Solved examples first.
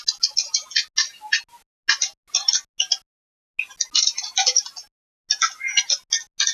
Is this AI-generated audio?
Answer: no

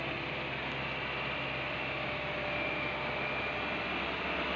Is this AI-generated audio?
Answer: no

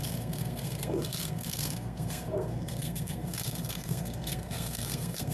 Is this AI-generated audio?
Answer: yes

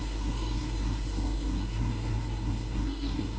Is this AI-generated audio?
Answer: yes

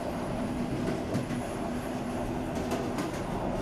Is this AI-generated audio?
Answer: no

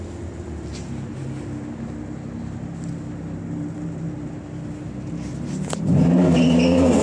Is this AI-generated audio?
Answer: no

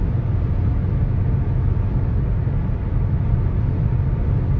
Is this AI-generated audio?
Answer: no